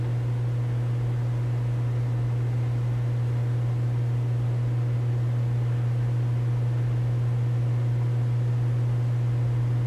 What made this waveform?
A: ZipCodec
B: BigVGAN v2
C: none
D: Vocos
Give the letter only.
C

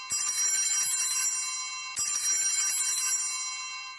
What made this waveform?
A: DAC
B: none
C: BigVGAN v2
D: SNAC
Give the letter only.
B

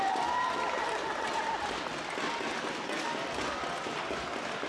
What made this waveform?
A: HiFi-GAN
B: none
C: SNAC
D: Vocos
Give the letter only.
B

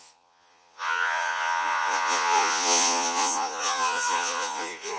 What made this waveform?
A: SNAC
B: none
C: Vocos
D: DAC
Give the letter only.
C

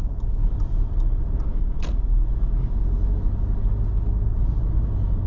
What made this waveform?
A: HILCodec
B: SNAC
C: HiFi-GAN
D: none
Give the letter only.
D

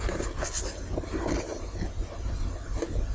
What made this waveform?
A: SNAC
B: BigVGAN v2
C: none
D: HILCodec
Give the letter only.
C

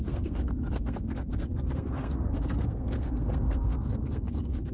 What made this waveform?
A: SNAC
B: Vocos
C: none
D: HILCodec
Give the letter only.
A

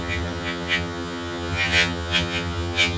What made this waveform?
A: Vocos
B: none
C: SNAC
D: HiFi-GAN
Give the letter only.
D